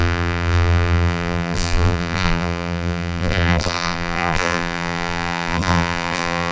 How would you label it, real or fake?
fake